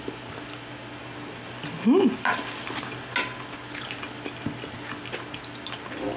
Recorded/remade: recorded